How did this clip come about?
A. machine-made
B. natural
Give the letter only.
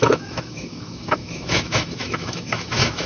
A